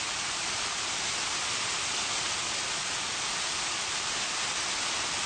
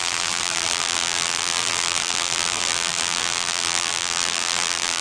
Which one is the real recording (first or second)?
first